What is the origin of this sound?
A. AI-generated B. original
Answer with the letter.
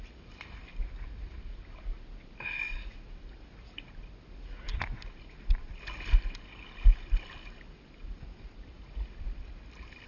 B